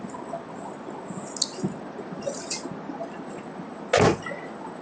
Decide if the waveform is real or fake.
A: real